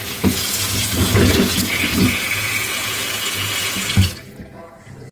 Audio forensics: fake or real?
fake